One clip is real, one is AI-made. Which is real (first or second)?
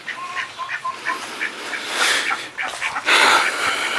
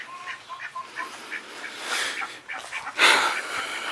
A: second